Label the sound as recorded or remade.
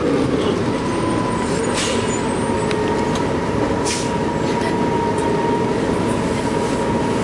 recorded